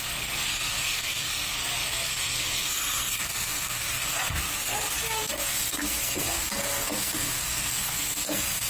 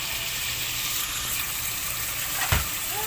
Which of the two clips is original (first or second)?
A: second